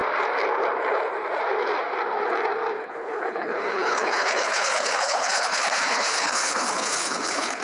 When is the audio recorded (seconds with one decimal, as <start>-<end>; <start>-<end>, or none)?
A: 0.0-2.8